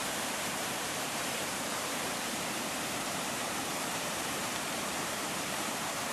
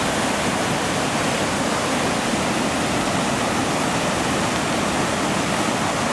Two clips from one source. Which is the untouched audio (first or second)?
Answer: second